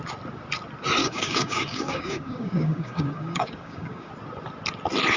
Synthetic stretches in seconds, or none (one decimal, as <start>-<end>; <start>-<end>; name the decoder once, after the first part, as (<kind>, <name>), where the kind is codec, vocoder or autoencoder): 1.0-4.1 (codec, DAC)